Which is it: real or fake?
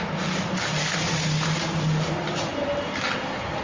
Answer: real